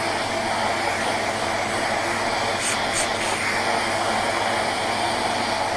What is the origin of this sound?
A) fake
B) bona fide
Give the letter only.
B